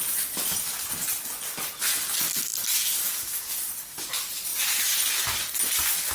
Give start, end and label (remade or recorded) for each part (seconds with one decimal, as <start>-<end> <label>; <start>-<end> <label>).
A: 0.0-4.5 recorded; 4.5-5.5 remade; 5.5-6.1 recorded